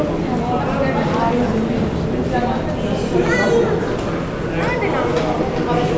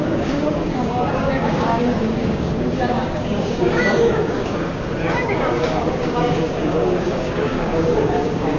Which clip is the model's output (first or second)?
second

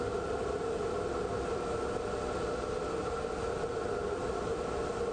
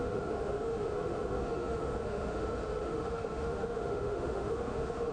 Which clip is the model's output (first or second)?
second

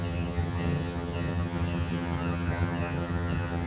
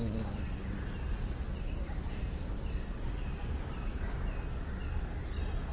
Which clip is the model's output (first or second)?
first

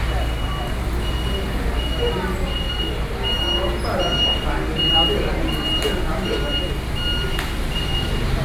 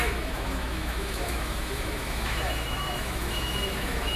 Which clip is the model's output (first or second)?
second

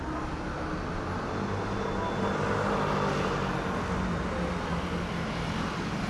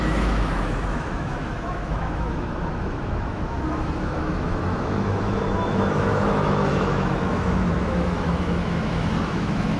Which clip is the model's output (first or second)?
second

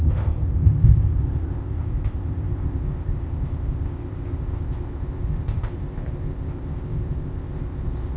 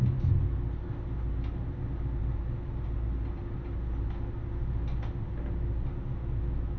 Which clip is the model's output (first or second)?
first